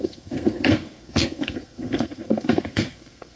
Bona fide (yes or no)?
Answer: no